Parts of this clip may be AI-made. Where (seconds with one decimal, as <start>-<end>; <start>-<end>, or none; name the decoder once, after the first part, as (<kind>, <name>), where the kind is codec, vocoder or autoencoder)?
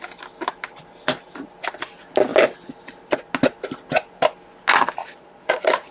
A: 5.0-5.9 (vocoder, Vocos)